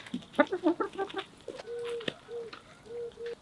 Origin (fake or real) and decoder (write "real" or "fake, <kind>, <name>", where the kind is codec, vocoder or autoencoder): real